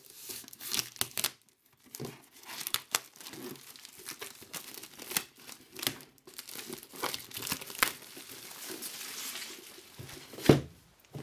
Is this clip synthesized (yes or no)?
no